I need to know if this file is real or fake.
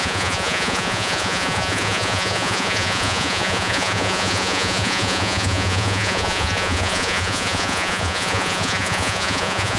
fake